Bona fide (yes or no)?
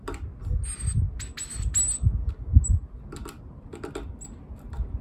yes